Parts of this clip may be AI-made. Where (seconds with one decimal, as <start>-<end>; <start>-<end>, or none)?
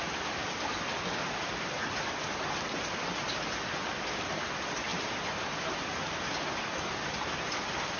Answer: 0.4-2.0; 4.9-6.9